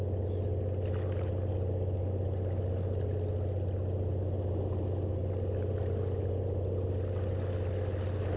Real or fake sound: real